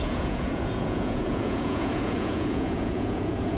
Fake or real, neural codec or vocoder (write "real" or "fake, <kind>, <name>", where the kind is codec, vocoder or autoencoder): fake, vocoder, Vocos